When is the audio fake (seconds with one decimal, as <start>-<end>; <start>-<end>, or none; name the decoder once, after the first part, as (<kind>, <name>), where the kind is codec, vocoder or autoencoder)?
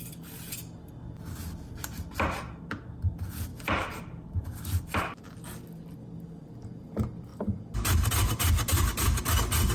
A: 3.5-5.0 (vocoder, BigVGAN v2)